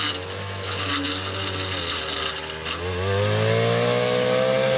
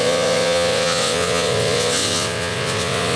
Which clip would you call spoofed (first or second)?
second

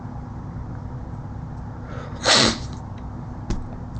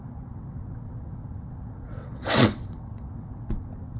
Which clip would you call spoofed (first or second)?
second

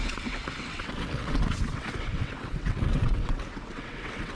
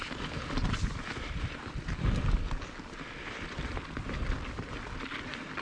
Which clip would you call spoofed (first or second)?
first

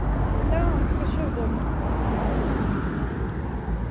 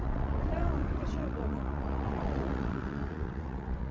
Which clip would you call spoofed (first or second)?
second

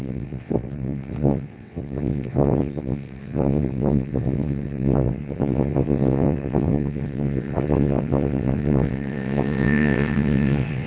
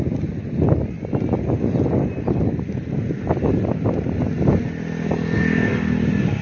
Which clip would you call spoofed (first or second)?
first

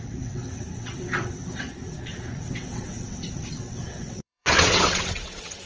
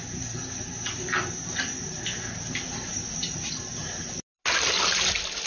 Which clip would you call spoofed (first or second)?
first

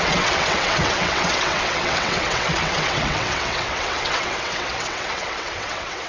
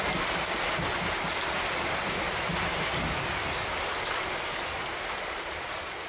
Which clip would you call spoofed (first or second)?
first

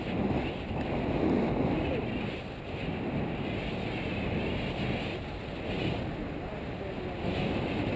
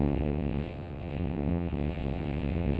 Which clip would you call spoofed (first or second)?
second